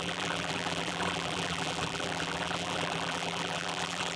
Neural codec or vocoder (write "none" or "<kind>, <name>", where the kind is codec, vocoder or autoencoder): vocoder, BigVGAN v2